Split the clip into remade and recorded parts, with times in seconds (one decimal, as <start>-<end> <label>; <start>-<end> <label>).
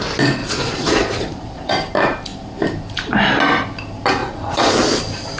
0.0-0.4 recorded; 0.4-1.7 remade; 1.7-4.2 recorded; 4.2-4.7 remade; 4.7-5.4 recorded